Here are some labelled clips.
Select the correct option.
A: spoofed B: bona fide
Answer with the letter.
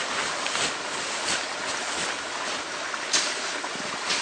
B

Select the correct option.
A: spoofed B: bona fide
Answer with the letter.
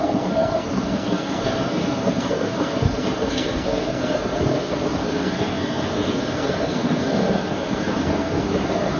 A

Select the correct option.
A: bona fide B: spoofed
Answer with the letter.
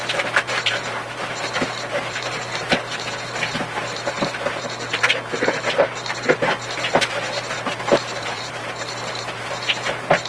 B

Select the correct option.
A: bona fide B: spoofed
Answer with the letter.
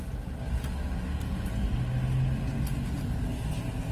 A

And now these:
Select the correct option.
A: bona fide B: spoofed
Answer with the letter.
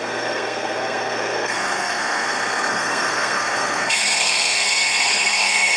B